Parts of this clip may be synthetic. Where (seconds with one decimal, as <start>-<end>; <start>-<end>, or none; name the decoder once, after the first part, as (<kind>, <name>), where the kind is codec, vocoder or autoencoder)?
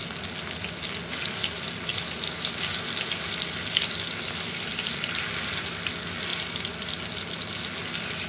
none